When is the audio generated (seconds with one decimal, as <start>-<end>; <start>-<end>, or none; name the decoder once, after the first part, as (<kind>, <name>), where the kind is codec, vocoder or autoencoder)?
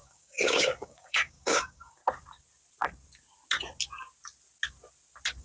0.0-2.0 (codec, DAC)